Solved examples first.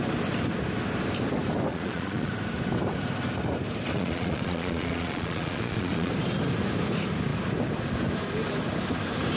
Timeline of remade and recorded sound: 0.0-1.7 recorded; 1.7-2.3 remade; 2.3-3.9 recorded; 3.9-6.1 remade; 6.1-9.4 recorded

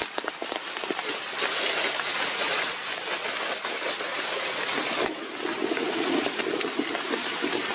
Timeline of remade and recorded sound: 0.0-2.1 recorded; 2.1-2.8 remade; 2.8-4.1 recorded; 4.1-4.8 remade; 4.8-5.6 recorded; 5.6-6.4 remade; 6.4-7.7 recorded

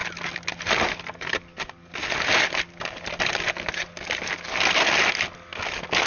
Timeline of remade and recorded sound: 0.0-6.1 recorded

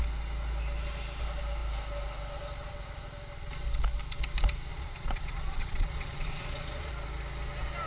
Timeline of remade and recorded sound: 0.0-4.7 recorded; 4.7-6.9 remade; 6.9-7.9 recorded